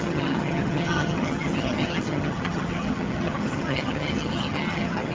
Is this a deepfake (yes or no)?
yes